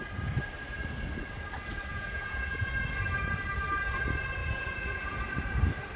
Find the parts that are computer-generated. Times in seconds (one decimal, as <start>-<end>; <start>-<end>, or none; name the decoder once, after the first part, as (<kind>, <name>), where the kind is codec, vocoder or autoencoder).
1.9-2.7 (vocoder, Vocos); 4.4-5.2